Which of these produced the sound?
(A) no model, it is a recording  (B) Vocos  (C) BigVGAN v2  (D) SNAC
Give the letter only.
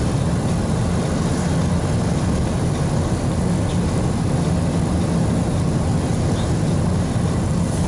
A